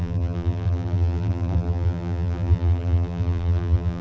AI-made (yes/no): yes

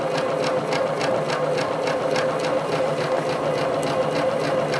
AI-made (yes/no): no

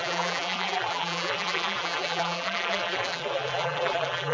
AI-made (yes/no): yes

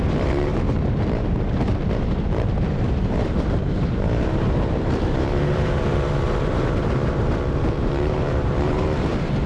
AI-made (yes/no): yes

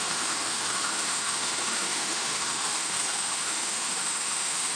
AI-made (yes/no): yes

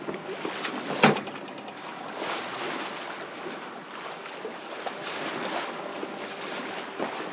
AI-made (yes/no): no